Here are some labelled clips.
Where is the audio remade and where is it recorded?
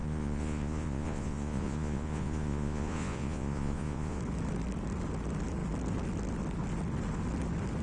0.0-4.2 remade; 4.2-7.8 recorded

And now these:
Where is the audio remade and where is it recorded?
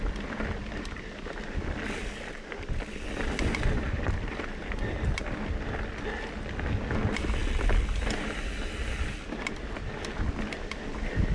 0.0-11.3 recorded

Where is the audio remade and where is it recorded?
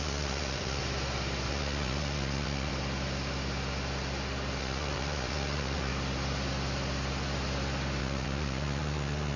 0.0-0.8 remade; 0.8-1.5 recorded; 1.5-2.7 remade; 2.7-4.6 recorded; 4.6-5.9 remade; 5.9-8.0 recorded; 8.0-9.4 remade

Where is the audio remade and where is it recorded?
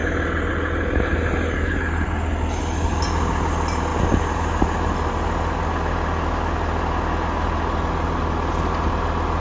0.0-9.4 recorded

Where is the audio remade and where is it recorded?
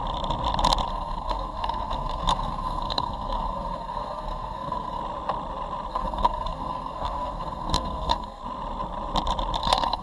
0.0-0.9 recorded; 0.9-5.0 remade; 5.0-5.9 recorded; 5.9-8.4 remade; 8.4-9.6 recorded; 9.6-10.0 remade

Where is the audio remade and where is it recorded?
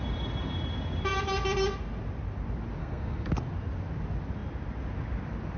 0.0-2.8 recorded; 2.8-3.3 remade; 3.3-5.6 recorded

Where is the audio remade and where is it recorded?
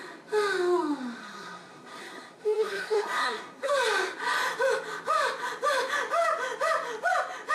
0.0-1.2 recorded; 1.2-3.7 remade; 3.7-7.5 recorded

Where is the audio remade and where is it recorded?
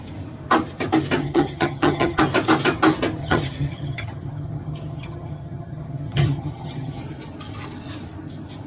0.0-1.2 recorded; 1.2-2.2 remade; 2.2-3.2 recorded; 3.2-7.0 remade; 7.0-8.7 recorded